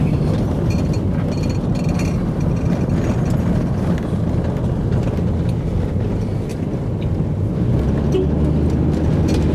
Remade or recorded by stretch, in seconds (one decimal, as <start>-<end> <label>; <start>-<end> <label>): 0.0-9.5 recorded